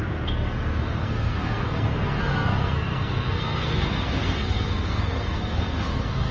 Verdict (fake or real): fake